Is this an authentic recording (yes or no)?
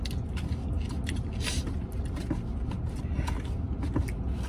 yes